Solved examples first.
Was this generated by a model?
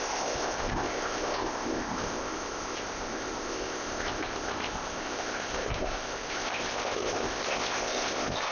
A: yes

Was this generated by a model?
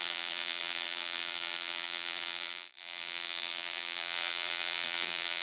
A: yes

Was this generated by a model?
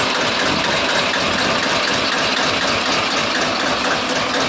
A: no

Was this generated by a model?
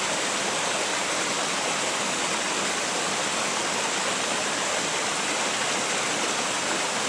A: no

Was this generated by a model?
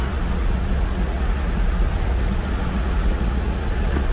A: yes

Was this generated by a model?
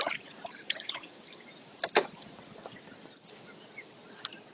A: no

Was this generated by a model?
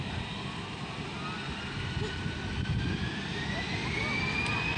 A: no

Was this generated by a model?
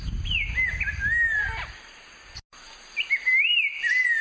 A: no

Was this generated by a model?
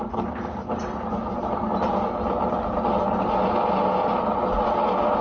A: no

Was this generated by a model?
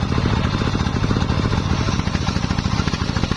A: no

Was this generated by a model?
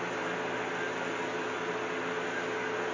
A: no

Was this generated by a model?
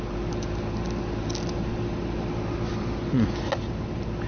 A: no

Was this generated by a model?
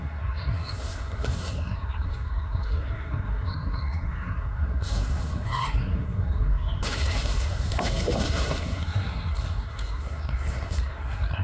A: yes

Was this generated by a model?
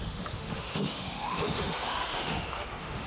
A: yes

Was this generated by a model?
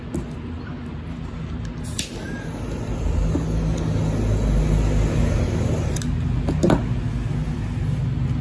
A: no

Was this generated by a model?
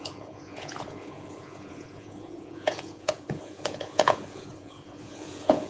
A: yes